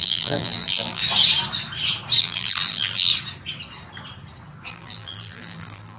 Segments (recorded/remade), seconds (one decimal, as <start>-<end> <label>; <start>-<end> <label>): 0.0-1.0 remade; 1.0-2.2 recorded; 2.2-3.1 remade; 3.1-4.7 recorded; 4.7-6.0 remade